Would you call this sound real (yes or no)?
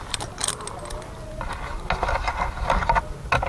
yes